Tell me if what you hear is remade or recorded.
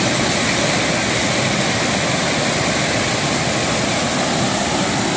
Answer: recorded